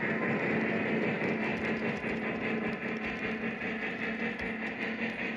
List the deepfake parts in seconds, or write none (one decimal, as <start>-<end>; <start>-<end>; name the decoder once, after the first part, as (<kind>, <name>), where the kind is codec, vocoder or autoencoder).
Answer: none